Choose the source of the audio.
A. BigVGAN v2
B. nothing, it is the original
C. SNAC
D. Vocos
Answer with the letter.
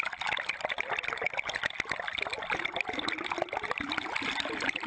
B